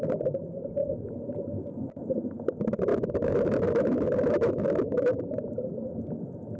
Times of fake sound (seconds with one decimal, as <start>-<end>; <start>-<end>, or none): 2.9-5.2